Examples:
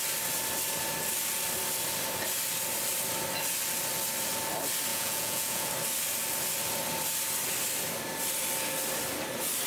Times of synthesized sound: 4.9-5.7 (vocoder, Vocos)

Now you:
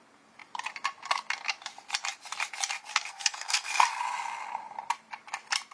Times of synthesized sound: 2.9-4.0 (codec, SNAC)

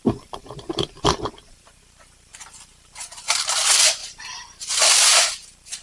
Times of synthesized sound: 0.0-5.8 (vocoder, BigVGAN v2)